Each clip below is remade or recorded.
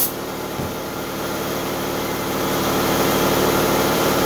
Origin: remade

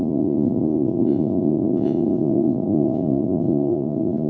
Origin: remade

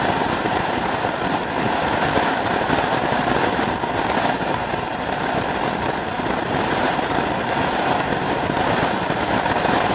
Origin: remade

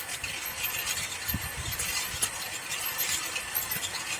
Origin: recorded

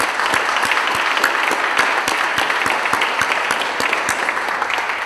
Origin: recorded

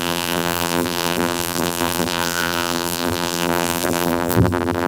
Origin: remade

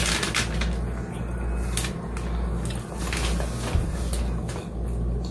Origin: recorded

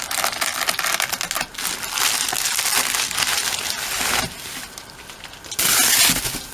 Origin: recorded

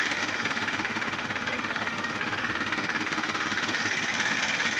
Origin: remade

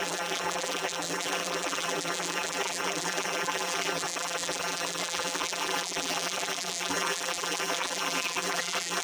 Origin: remade